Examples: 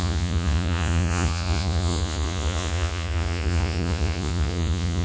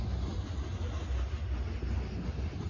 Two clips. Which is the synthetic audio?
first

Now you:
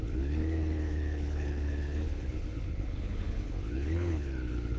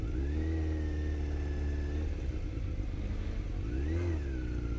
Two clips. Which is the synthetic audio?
first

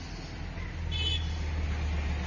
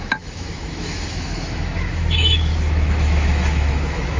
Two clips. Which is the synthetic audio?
second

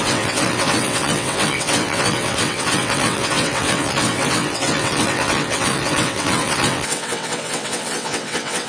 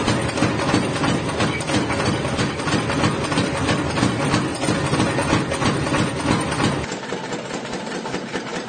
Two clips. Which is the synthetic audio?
first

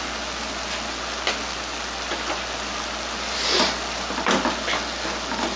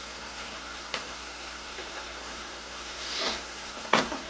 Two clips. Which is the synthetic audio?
second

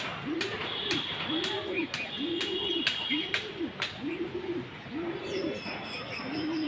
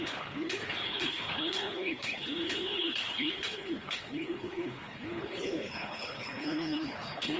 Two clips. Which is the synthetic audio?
second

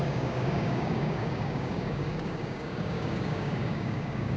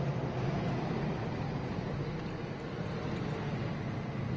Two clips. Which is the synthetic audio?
first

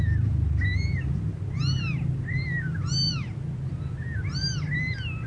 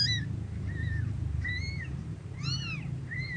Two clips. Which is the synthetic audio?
second